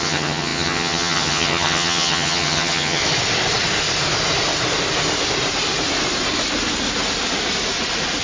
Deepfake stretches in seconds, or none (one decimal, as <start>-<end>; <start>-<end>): 0.0-3.0